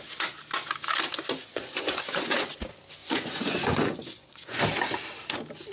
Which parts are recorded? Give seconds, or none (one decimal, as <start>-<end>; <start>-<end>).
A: 0.0-1.4; 2.5-3.0; 4.6-5.7